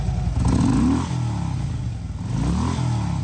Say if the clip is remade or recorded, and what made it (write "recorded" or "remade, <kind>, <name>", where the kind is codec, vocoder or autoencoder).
recorded